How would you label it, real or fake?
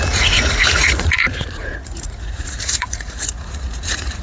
fake